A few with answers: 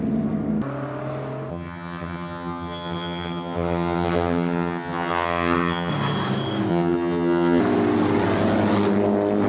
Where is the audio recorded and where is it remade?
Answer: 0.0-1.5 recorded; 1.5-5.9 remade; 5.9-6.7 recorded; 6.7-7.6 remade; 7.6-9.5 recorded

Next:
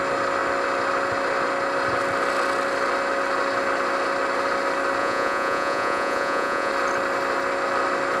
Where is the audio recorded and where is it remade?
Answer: 0.0-5.0 recorded; 5.0-6.7 remade; 6.7-8.2 recorded